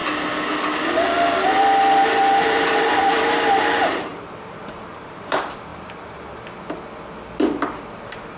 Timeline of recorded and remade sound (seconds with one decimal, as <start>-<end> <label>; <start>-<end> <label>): 0.0-2.4 recorded; 2.4-5.7 remade; 5.7-7.9 recorded; 7.9-8.4 remade